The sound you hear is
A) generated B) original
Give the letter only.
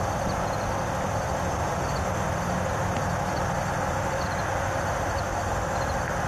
B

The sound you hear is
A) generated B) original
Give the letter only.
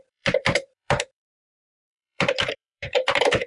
A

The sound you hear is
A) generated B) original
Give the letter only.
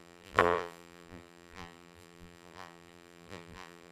A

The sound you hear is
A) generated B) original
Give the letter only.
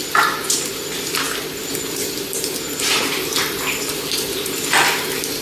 B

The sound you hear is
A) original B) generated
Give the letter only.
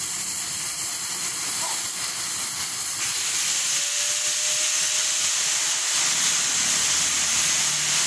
A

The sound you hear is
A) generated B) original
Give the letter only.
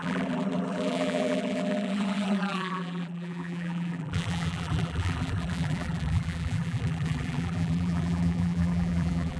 A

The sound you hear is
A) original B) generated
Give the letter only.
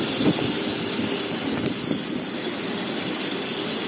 A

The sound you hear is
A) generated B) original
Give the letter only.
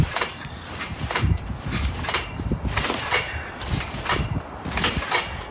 A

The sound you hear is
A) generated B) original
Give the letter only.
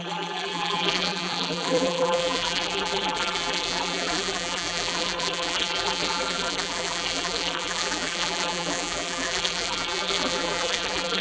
A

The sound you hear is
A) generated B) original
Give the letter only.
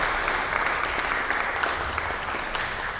B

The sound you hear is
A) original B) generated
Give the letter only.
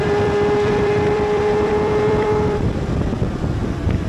B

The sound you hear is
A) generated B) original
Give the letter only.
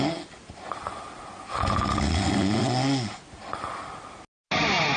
B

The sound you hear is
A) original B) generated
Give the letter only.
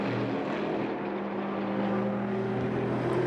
A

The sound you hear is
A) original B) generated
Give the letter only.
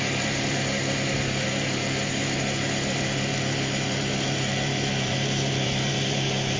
B